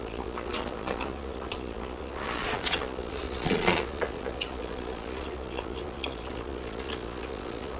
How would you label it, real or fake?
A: fake